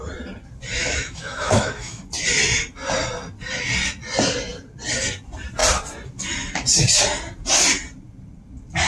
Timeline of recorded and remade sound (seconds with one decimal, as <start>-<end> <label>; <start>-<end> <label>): 0.0-0.8 recorded; 0.8-2.0 remade; 2.0-8.9 recorded